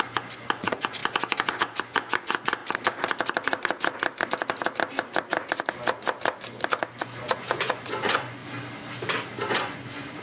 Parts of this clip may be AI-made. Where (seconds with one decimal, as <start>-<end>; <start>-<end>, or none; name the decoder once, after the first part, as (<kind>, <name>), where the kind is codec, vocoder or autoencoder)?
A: 0.0-2.6 (vocoder, Vocos); 7.0-8.4; 9.5-10.2